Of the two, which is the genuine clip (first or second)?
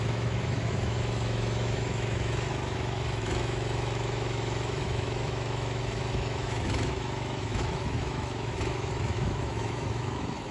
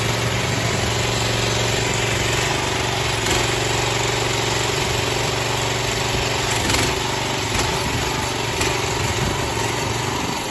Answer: second